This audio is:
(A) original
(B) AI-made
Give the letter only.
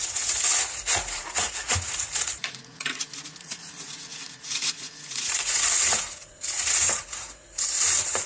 B